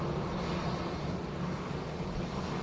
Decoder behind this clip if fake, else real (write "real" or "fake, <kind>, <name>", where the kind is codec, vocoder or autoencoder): real